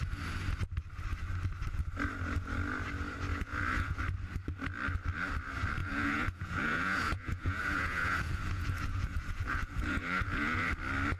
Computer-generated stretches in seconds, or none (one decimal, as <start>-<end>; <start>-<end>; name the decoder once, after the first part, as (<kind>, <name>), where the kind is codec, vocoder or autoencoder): 3.3-4.0 (vocoder, Vocos); 5.8-10.7

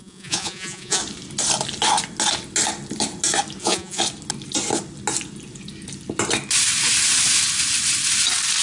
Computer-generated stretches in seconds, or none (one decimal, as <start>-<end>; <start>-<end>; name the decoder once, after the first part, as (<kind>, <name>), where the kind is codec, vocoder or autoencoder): 0.0-1.0 (vocoder, Vocos); 3.6-4.0